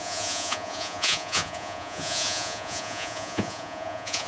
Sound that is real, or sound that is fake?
fake